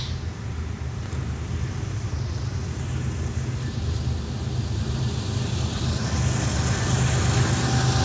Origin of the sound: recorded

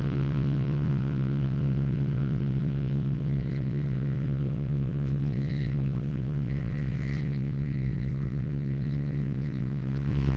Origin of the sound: remade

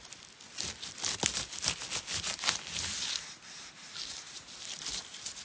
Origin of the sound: recorded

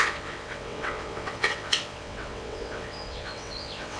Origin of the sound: remade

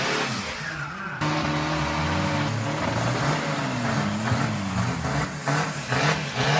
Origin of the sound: recorded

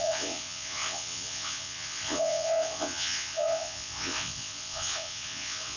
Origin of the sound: remade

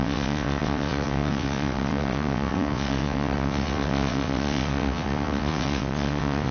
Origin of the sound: remade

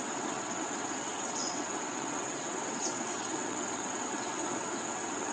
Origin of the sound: remade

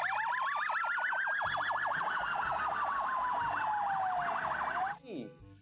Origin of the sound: recorded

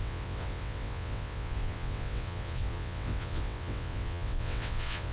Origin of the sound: remade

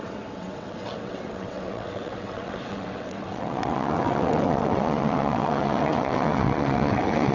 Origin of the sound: remade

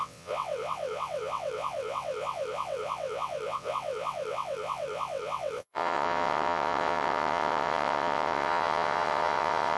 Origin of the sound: remade